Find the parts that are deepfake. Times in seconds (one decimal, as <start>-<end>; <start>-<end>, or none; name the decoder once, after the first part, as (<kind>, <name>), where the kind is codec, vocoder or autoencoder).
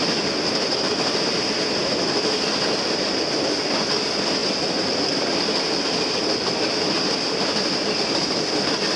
none